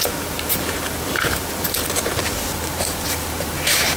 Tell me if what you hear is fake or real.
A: fake